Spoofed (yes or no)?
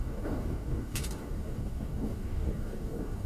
yes